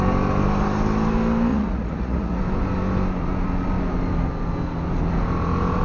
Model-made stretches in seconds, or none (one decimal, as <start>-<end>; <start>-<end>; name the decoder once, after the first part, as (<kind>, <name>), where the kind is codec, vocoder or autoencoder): 1.5-2.4 (vocoder, Vocos)